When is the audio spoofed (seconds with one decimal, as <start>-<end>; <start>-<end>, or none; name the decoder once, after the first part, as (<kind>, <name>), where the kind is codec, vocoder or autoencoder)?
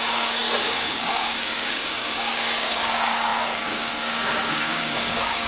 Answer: 0.0-5.5 (codec, DAC)